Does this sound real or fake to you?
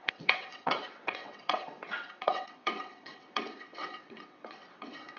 fake